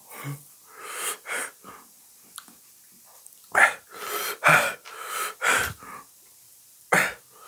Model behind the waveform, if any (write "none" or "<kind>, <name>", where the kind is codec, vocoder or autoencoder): vocoder, BigVGAN v2